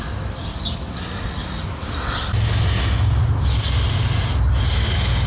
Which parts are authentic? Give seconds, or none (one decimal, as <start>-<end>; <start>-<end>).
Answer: 0.0-5.3